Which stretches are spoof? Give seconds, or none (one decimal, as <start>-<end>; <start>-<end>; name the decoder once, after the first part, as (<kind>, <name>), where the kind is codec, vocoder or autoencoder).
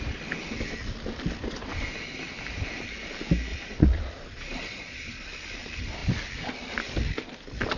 3.5-5.3 (vocoder, Vocos)